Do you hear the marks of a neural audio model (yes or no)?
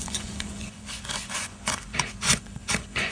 yes